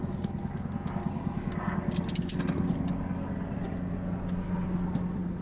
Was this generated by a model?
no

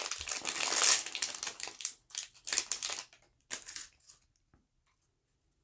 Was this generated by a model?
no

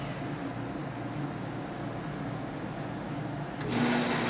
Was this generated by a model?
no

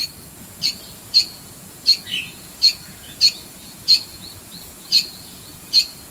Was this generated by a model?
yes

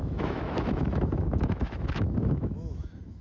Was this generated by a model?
yes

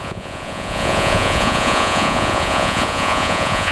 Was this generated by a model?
yes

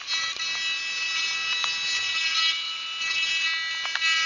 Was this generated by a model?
no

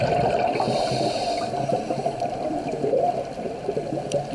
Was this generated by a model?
no